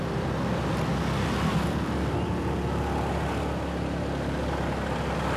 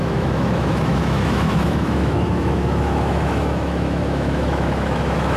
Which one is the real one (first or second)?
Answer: first